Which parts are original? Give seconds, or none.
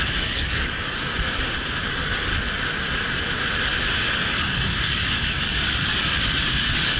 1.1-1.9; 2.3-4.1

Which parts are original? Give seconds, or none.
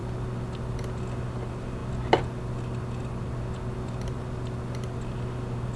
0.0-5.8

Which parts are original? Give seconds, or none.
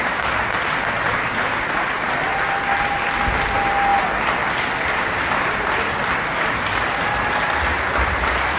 0.0-8.6